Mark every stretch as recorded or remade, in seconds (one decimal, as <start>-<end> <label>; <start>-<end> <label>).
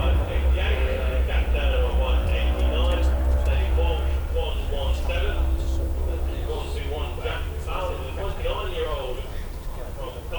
0.0-2.3 remade; 2.3-4.1 recorded; 4.1-9.3 remade; 9.3-10.0 recorded; 10.0-10.4 remade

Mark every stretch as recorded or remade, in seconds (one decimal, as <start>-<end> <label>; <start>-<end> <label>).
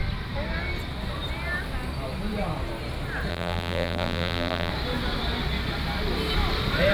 0.0-3.3 recorded; 3.3-4.7 remade; 4.7-6.9 recorded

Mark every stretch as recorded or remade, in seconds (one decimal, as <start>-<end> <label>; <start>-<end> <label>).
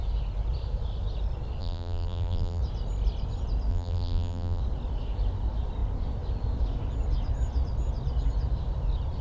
0.0-1.6 recorded; 1.6-2.6 remade; 2.6-3.7 recorded; 3.7-4.6 remade; 4.6-9.2 recorded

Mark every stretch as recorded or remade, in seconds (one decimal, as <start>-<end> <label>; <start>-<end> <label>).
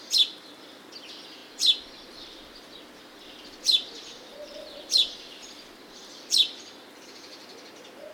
0.0-8.1 recorded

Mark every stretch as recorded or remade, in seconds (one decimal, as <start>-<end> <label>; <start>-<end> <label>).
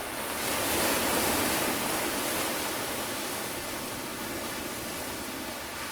0.0-5.9 recorded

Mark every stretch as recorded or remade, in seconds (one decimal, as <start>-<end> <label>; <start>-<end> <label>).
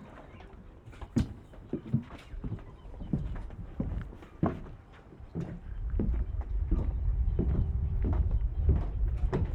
0.0-0.9 recorded; 0.9-3.9 remade; 3.9-4.8 recorded; 4.8-6.9 remade; 6.9-7.9 recorded; 7.9-9.5 remade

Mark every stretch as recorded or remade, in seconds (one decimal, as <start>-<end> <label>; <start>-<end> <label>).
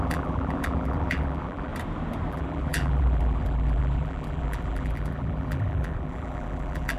0.0-1.7 remade; 1.7-2.3 recorded; 2.3-7.0 remade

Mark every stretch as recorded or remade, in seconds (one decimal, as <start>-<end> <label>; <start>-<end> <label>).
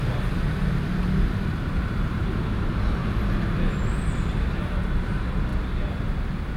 0.0-3.0 remade; 3.0-4.3 recorded; 4.3-5.5 remade; 5.5-6.6 recorded